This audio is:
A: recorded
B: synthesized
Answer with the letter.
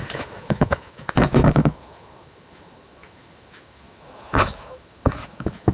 B